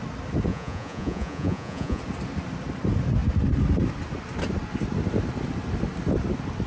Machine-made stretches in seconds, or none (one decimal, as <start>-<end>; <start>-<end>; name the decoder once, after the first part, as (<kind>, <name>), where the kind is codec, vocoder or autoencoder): 0.5-2.0 (vocoder, Vocos)